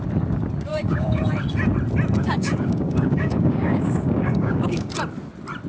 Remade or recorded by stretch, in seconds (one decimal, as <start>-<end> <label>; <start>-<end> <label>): 0.0-0.7 recorded; 0.7-1.2 remade; 1.2-2.2 recorded; 2.2-4.9 remade; 4.9-5.7 recorded